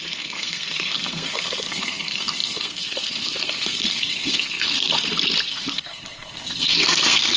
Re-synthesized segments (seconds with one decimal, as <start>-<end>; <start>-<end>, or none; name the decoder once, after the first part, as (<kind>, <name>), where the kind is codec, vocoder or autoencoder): 0.0-4.9 (codec, SNAC); 5.5-7.4